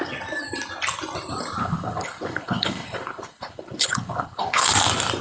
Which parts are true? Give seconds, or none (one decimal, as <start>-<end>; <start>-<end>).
0.0-1.6; 4.7-5.2

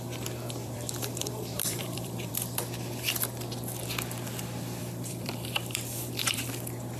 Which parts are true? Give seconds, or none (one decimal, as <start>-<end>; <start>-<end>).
0.0-0.6; 2.3-4.8; 6.5-7.0

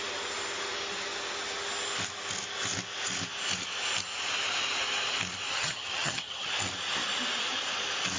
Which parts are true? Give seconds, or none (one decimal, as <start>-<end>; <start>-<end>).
0.0-5.5; 6.5-8.2

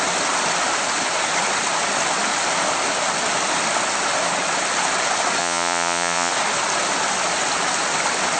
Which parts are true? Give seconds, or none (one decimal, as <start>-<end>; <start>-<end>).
0.0-5.4; 6.3-8.4

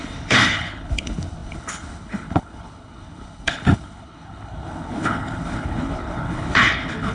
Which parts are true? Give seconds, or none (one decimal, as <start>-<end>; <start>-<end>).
none

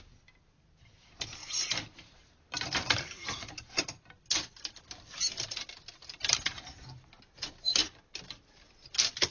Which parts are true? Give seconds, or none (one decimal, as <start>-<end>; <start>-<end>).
0.0-9.3

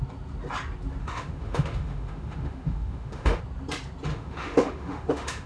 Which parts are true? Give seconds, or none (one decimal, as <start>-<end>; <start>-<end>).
0.0-1.0; 3.4-4.1

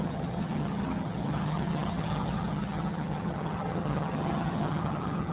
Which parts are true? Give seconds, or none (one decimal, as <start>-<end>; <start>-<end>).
none